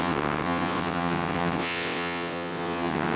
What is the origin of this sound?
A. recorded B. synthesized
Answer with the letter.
B